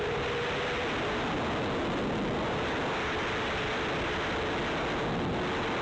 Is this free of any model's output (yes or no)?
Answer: yes